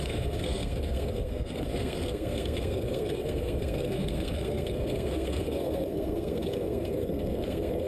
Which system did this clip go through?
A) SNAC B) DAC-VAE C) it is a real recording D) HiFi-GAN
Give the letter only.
A